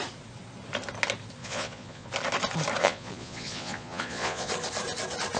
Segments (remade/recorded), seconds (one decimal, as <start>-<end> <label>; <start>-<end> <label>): 0.0-1.4 recorded; 1.4-2.1 remade; 2.1-2.8 recorded; 2.8-4.5 remade; 4.5-5.4 recorded